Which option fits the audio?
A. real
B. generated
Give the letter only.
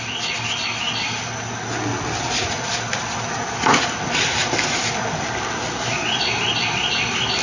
A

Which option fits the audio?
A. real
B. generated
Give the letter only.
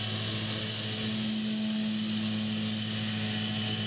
A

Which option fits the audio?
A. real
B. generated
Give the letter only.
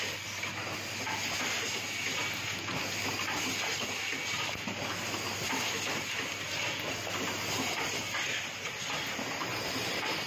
A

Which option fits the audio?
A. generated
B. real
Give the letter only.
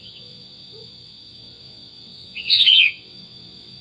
A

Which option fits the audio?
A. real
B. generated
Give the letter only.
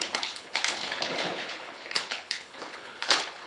B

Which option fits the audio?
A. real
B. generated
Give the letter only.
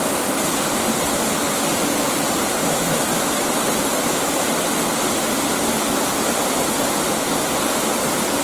A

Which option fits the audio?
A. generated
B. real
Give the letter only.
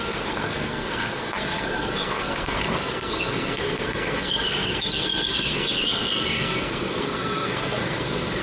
A